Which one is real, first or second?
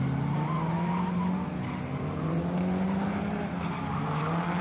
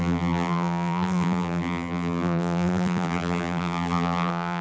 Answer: first